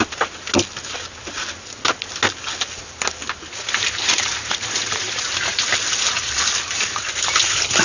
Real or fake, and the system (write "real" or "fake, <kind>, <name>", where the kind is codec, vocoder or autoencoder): real